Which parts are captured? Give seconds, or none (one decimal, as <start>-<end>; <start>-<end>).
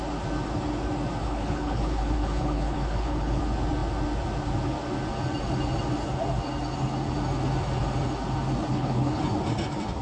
0.0-1.2; 3.4-8.7; 9.2-10.0